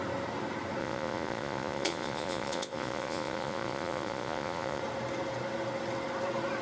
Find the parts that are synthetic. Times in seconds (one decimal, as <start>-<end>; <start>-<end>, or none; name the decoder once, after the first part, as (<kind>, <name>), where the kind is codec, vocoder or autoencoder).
0.8-4.8 (vocoder, Vocos)